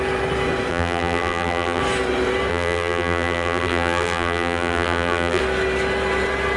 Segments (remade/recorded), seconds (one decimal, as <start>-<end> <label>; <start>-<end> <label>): 0.0-0.7 recorded; 0.7-1.8 remade; 1.8-2.5 recorded; 2.5-5.4 remade; 5.4-6.6 recorded